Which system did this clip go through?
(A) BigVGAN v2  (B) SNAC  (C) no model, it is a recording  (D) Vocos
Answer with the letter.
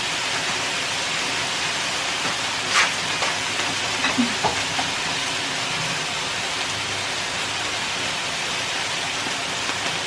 C